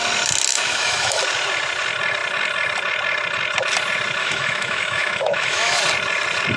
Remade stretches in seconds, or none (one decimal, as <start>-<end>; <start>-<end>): 0.5-1.2; 4.2-5.8